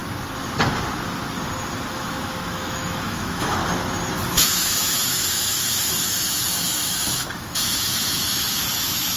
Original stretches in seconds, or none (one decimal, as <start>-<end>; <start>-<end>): 0.0-1.9; 3.6-4.3